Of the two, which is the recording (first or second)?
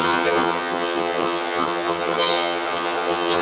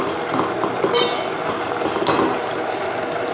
second